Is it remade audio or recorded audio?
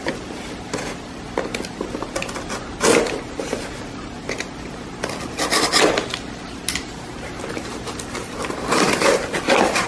recorded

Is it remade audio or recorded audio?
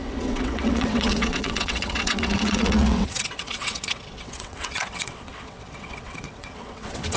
remade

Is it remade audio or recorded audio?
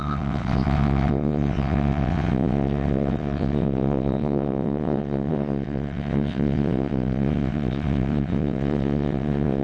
remade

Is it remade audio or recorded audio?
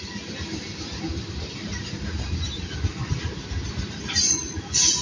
recorded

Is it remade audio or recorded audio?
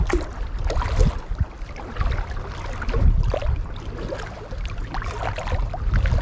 recorded